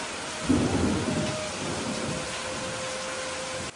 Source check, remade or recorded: recorded